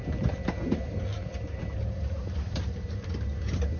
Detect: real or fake real